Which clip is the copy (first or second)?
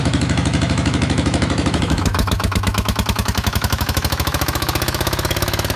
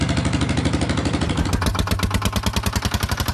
first